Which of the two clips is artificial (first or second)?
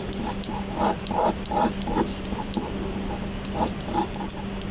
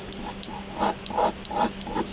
first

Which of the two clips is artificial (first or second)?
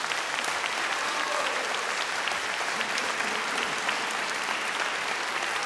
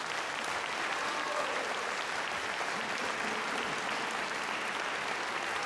first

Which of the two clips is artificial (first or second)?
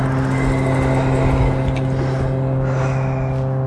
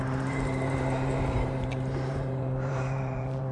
second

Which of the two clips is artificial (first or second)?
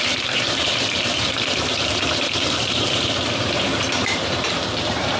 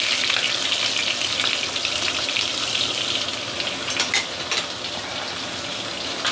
first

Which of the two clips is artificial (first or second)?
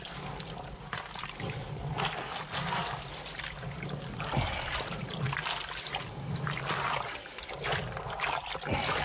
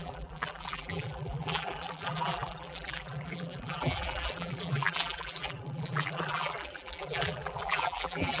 second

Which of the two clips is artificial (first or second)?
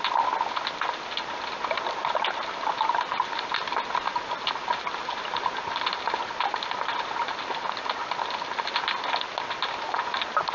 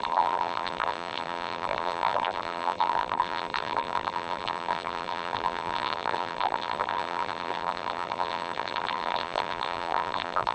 second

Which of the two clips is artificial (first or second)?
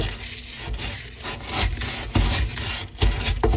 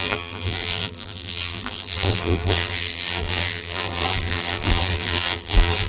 second